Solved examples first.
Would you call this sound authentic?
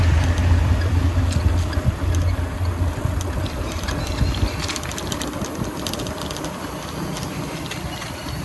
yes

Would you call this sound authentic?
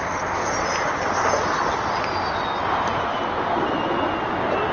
yes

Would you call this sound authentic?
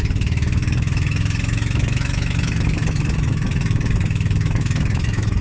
no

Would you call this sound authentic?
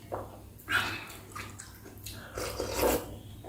yes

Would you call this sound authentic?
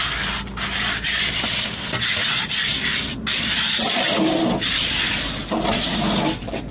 yes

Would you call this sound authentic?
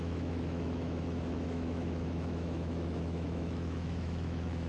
no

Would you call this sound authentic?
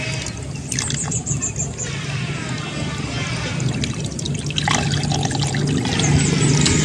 yes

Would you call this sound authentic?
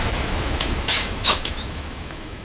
no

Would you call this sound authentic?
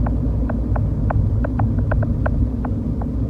yes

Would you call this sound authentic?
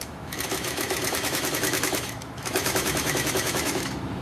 no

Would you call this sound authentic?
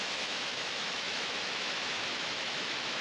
no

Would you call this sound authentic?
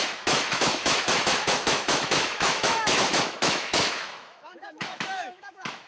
no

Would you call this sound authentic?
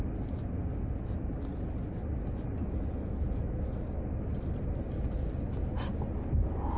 yes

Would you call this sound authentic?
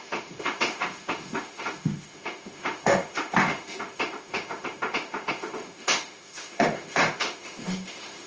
no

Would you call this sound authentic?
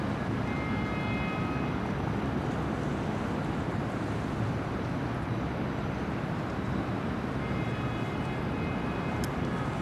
yes